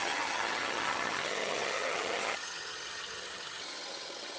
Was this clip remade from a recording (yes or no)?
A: yes